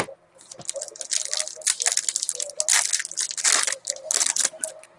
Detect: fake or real real